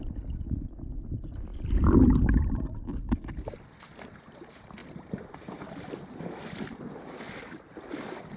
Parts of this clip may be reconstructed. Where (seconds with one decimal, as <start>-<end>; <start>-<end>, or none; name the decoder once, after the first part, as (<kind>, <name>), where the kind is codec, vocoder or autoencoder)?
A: none